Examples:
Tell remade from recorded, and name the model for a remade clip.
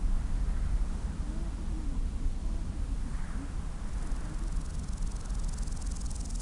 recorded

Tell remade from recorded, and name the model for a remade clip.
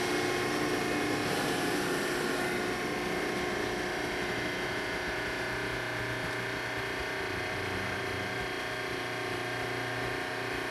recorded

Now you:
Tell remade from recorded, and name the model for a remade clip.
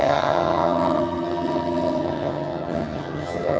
remade, vocoder, HiFi-GAN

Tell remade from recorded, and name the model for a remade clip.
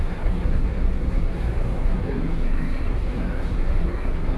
remade, codec, SNAC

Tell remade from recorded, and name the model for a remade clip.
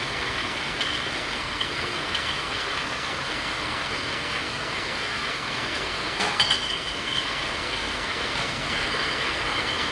remade, codec, SNAC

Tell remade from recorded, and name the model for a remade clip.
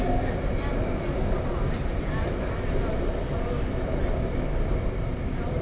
recorded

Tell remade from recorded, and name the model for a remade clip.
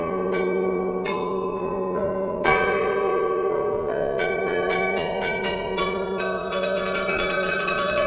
remade, vocoder, Vocos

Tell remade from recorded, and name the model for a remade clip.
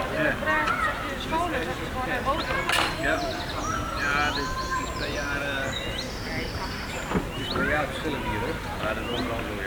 recorded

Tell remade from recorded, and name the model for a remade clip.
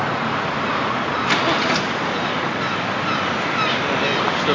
recorded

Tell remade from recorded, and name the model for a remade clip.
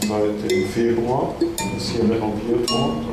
recorded